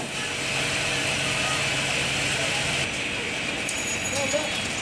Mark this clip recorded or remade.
recorded